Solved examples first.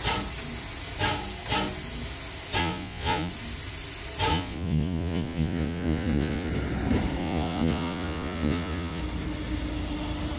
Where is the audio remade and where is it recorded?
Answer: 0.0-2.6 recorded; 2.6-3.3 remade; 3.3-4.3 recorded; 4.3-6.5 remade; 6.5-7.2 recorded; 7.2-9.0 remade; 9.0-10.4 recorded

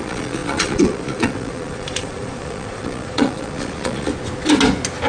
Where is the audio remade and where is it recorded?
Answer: 0.0-4.1 remade; 4.1-5.1 recorded

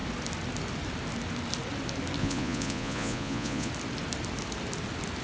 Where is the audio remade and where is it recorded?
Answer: 0.0-2.2 recorded; 2.2-3.7 remade; 3.7-5.2 recorded

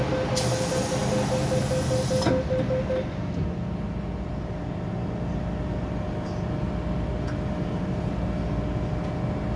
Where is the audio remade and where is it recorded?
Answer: 0.0-9.6 recorded

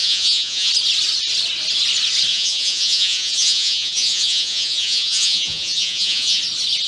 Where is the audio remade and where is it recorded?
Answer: 0.0-0.7 remade; 0.7-2.3 recorded; 2.3-6.4 remade; 6.4-6.9 recorded

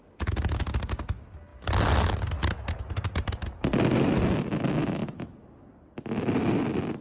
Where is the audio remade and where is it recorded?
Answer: 0.0-7.0 recorded

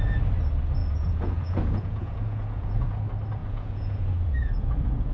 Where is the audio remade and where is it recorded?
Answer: 0.0-0.8 recorded; 0.8-3.0 remade; 3.0-3.4 recorded; 3.4-5.1 remade

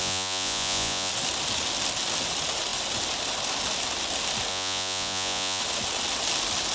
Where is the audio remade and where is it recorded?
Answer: 0.0-1.1 remade; 1.1-4.5 recorded; 4.5-5.6 remade; 5.6-6.7 recorded